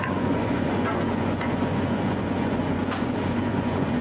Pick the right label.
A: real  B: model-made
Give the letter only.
B